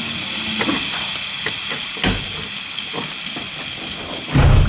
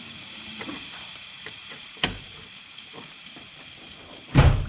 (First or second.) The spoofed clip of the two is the second